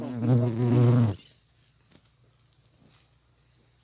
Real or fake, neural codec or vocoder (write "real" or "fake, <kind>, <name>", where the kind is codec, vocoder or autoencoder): real